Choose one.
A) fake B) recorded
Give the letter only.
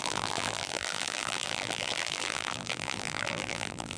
A